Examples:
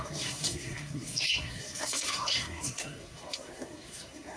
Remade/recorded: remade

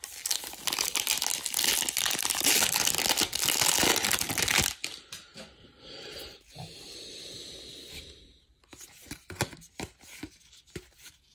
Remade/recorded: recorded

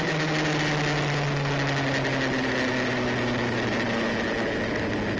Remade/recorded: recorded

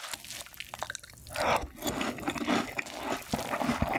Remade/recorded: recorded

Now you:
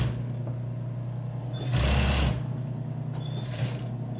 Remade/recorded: recorded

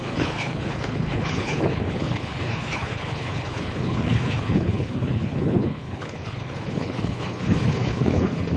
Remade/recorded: remade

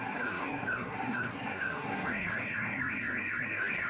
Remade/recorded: remade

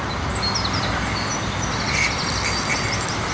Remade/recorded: recorded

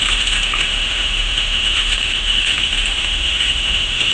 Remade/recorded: remade